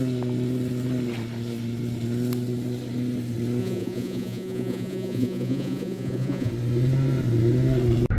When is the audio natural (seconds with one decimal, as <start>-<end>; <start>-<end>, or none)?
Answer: 0.0-3.6; 6.5-8.2